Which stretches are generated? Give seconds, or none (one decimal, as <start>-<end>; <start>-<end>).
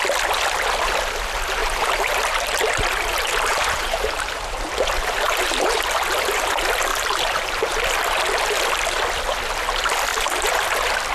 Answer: 1.6-2.1; 3.1-6.0; 6.9-7.8; 10.1-10.6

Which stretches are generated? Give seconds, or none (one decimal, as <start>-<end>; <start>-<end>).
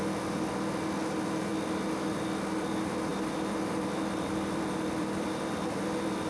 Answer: 3.1-6.3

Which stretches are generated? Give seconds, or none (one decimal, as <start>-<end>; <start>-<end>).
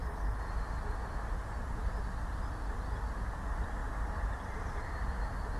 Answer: none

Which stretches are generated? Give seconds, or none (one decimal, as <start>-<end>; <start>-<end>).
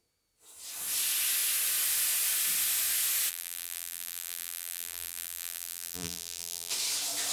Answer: 3.3-6.7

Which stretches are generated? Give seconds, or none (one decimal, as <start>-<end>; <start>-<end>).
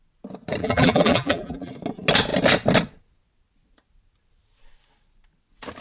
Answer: 0.6-1.7